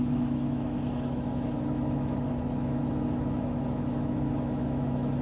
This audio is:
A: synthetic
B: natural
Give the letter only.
A